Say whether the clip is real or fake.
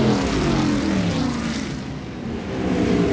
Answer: real